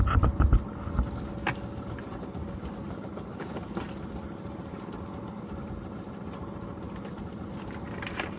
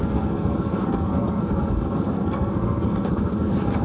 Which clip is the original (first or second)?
first